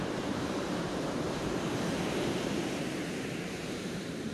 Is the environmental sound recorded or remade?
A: remade